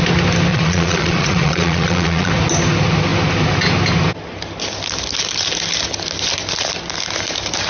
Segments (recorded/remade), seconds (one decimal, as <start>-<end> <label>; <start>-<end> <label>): 0.0-0.5 recorded; 0.5-2.3 remade; 2.3-7.7 recorded